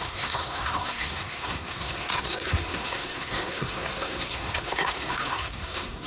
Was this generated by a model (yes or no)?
yes